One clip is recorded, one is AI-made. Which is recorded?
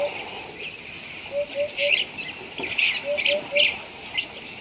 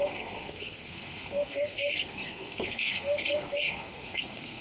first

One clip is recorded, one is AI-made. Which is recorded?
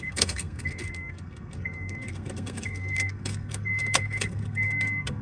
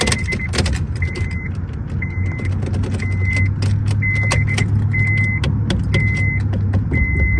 second